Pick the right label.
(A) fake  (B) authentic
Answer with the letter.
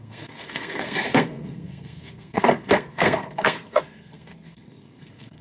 A